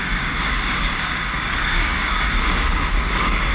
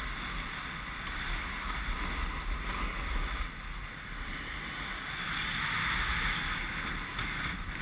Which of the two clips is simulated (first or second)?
first